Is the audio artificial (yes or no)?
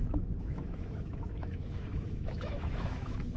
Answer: yes